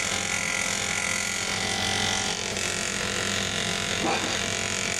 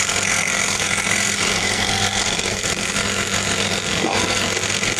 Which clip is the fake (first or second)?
second